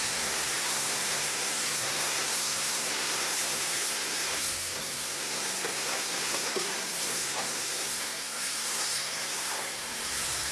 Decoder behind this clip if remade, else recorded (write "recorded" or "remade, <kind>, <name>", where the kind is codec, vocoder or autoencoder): remade, codec, SNAC